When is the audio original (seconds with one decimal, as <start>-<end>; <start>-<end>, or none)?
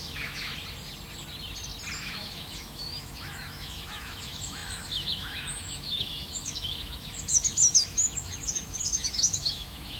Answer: 0.5-2.0